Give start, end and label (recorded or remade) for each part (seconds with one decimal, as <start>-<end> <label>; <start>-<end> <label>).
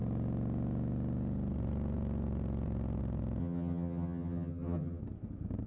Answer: 0.0-3.4 recorded; 3.4-5.0 remade; 5.0-5.7 recorded